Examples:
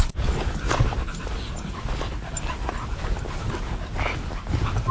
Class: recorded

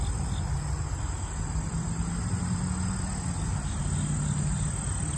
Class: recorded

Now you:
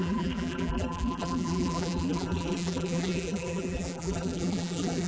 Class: remade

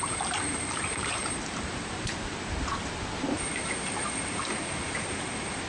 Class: remade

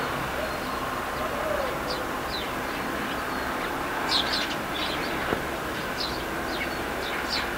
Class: recorded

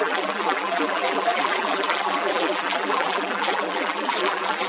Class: remade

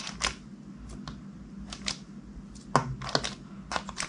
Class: recorded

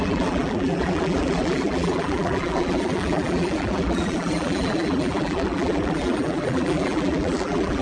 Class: remade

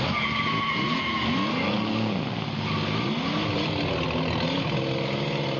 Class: recorded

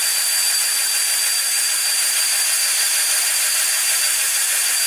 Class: remade